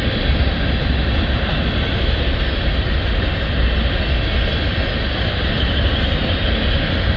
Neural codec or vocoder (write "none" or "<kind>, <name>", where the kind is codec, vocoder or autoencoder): none